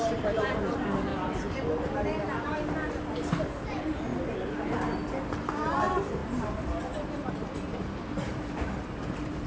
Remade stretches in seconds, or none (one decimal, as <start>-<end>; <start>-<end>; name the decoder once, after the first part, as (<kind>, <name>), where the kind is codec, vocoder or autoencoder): 0.0-1.1 (vocoder, BigVGAN v2); 3.1-4.1; 5.5-9.5